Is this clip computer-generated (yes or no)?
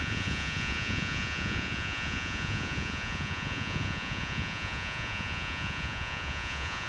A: yes